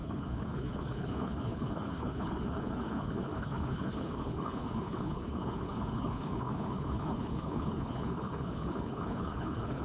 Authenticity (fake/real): fake